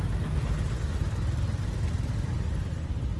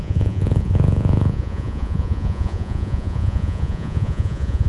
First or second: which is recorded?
first